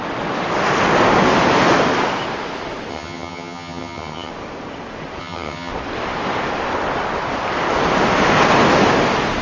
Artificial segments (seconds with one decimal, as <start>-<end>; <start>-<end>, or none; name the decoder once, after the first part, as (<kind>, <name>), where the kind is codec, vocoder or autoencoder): 2.9-4.3 (vocoder, HiFi-GAN); 5.2-5.7